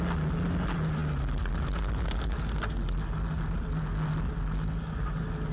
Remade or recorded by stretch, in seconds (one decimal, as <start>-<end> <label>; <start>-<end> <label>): 0.0-5.5 recorded